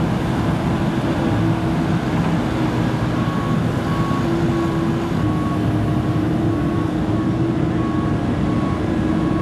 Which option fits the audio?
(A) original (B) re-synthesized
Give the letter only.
A